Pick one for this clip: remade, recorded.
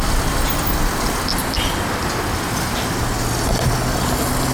recorded